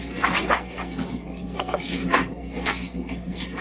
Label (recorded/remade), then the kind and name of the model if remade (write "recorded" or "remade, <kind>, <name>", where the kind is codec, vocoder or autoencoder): remade, codec, SNAC